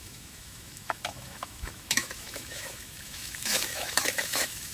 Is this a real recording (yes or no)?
no